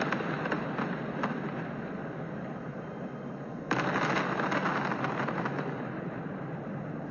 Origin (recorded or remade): recorded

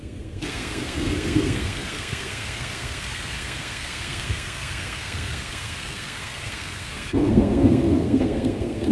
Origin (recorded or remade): remade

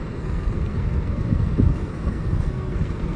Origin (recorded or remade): remade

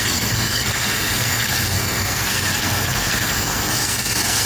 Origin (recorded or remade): remade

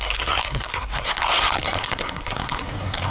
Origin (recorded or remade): remade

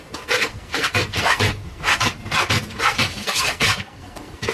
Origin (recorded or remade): remade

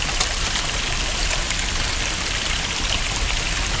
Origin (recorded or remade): recorded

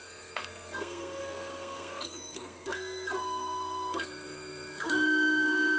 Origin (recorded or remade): remade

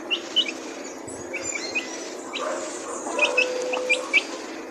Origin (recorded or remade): recorded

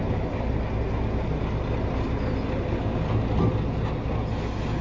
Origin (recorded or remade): recorded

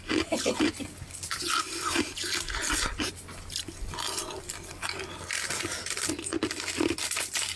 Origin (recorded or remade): recorded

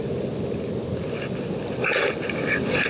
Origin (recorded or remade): recorded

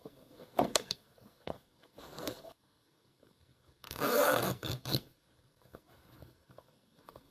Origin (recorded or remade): remade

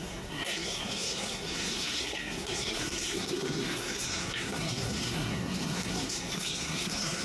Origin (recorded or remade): remade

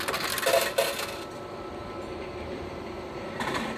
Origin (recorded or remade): recorded